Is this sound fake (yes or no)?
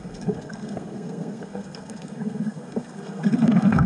yes